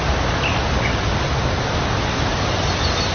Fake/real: real